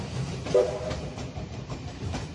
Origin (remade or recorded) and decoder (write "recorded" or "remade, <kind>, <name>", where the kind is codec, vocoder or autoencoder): remade, vocoder, BigVGAN v2